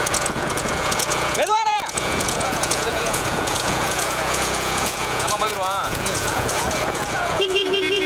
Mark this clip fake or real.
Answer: fake